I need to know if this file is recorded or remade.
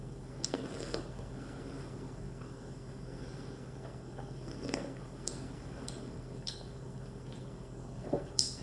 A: remade